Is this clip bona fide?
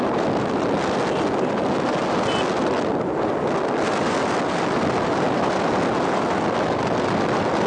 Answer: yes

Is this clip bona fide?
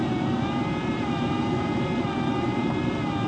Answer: no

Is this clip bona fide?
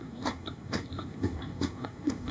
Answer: no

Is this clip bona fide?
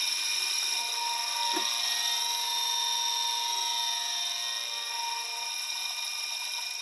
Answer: yes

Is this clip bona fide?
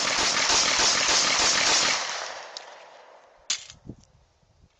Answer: yes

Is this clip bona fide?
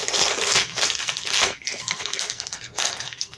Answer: no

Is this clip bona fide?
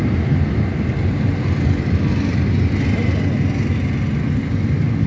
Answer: yes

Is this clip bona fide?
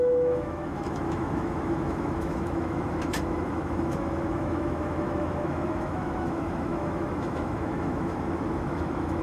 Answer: no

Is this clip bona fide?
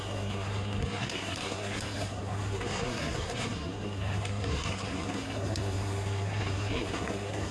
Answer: no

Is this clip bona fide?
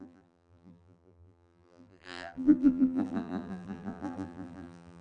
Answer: no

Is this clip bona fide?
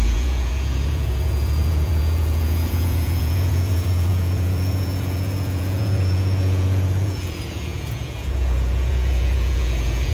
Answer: no